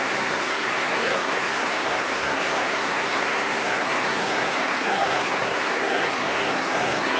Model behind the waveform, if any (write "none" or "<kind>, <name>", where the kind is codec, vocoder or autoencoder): codec, SNAC